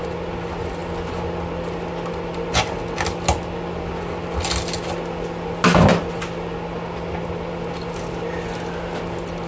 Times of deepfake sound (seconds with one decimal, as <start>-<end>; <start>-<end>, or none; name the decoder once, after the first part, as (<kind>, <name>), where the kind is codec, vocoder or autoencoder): none